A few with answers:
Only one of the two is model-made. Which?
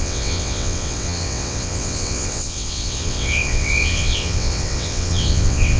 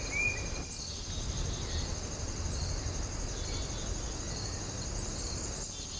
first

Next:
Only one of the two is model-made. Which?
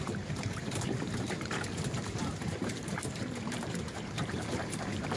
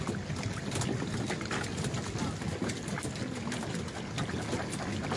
first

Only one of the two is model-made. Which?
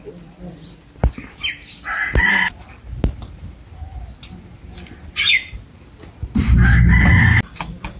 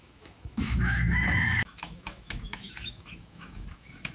second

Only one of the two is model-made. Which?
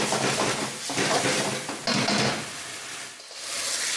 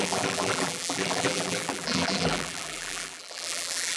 second